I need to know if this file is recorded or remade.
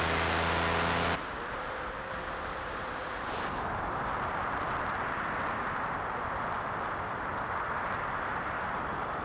recorded